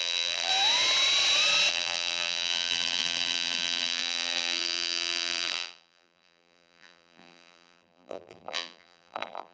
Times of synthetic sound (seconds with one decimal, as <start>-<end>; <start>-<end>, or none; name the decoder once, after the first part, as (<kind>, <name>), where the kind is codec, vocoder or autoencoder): 0.0-0.5 (vocoder, BigVGAN v2); 1.7-9.5